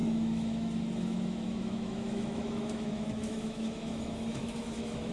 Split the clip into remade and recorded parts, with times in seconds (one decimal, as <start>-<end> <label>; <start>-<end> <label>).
0.0-5.1 remade